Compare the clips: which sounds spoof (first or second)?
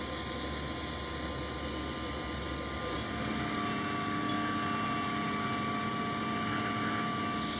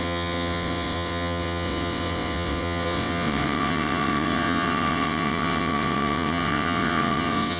second